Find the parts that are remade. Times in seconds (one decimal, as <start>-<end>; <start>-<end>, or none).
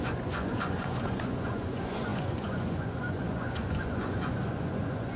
0.0-5.2